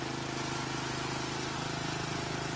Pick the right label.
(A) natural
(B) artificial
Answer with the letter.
A